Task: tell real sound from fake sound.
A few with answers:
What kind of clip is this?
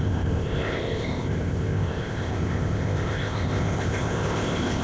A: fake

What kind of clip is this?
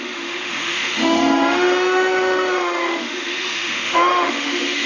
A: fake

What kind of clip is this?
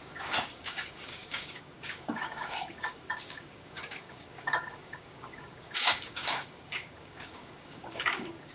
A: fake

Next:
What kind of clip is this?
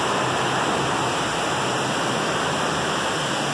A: real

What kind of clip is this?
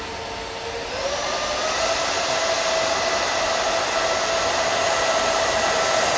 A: real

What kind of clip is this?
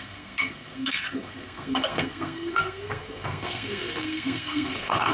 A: fake